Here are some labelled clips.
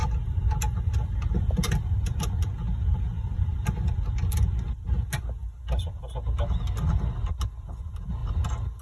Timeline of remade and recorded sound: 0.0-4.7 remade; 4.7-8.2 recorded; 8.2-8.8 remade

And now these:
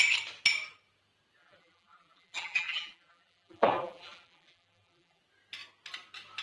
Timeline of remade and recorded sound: 0.0-1.4 recorded; 1.4-5.2 remade; 5.2-6.4 recorded

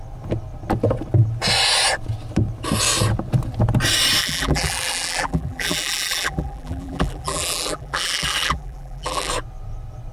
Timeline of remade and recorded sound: 0.0-4.2 recorded; 4.2-9.3 remade; 9.3-10.1 recorded

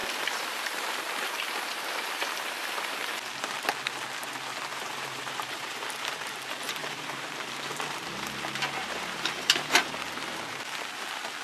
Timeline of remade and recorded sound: 0.0-3.1 remade; 3.1-4.7 recorded; 4.7-9.9 remade; 9.9-11.4 recorded

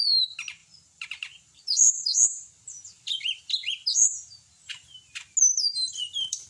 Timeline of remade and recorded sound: 0.0-0.6 recorded; 0.6-3.4 remade; 3.4-5.5 recorded; 5.5-6.5 remade